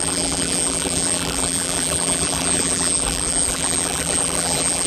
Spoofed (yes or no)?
yes